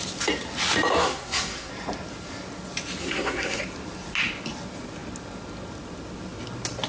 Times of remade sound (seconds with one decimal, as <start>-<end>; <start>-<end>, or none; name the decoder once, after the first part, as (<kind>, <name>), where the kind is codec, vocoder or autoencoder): 1.0-1.7 (codec, SNAC); 3.0-3.6